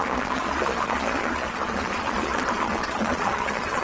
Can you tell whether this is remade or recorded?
remade